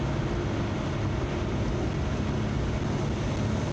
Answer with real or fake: real